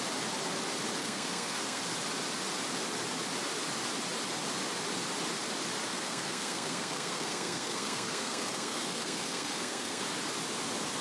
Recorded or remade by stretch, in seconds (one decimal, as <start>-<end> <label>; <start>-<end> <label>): 0.0-1.0 recorded; 1.0-1.8 remade; 1.8-5.9 recorded; 5.9-10.0 remade; 10.0-11.0 recorded